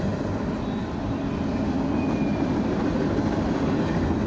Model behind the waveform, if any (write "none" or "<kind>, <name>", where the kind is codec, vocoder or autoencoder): none